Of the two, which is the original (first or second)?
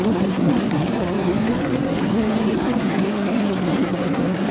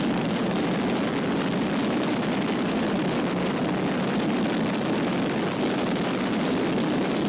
second